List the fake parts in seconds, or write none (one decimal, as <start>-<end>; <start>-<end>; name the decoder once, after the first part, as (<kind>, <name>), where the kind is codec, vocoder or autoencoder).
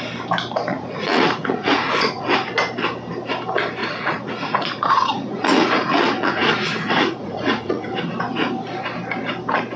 0.7-2.5 (vocoder, Vocos); 3.8-8.1